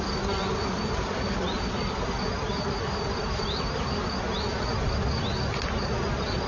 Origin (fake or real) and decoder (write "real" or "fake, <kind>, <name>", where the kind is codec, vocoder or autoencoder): real